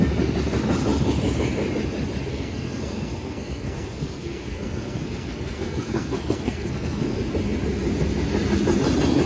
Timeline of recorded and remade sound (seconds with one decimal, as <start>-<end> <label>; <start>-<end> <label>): 0.0-2.3 recorded; 2.3-7.2 remade; 7.2-9.3 recorded